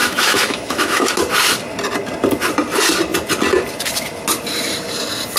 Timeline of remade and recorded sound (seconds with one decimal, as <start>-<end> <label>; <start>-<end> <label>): 0.0-1.1 remade; 1.1-5.4 recorded